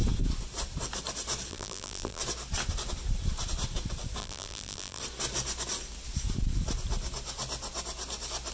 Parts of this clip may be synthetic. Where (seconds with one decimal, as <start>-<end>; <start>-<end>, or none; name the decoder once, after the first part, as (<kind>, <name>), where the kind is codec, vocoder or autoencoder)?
1.5-2.2 (vocoder, BigVGAN v2); 4.2-5.0